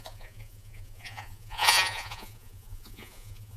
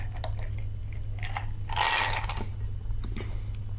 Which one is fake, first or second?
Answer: first